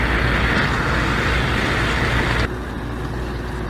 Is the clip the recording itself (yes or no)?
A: yes